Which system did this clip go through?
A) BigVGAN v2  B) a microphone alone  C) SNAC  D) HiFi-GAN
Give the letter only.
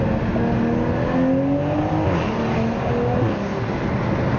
B